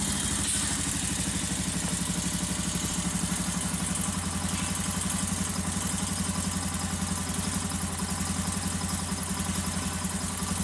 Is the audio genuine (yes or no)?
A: yes